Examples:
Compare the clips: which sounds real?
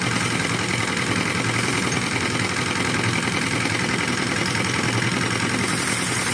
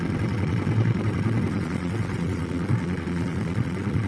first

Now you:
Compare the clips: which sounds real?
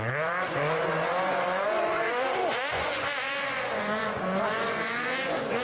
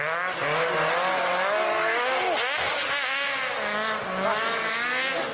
second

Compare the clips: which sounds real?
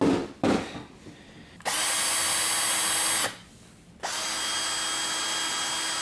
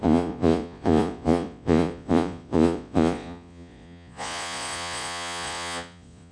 first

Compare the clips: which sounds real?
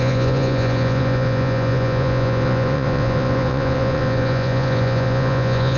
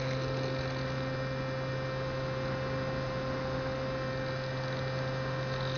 second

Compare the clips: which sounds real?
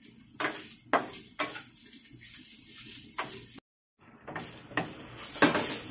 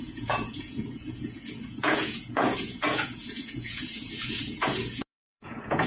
first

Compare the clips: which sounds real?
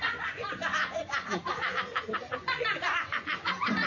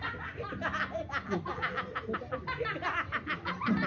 second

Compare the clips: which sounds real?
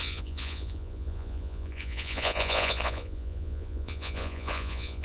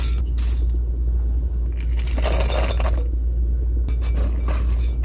second